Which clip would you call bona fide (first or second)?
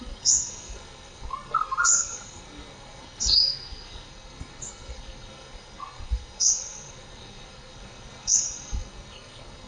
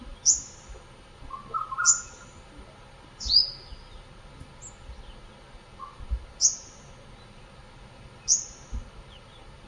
second